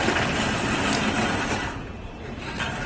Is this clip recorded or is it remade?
remade